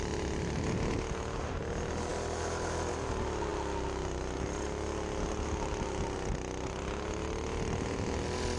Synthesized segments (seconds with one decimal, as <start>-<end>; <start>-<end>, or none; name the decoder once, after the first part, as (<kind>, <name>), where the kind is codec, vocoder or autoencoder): none